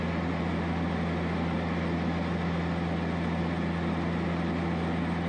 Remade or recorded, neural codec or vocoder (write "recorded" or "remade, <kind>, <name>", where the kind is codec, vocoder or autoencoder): recorded